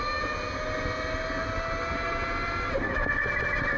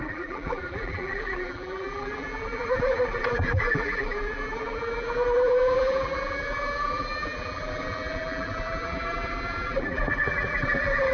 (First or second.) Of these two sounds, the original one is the first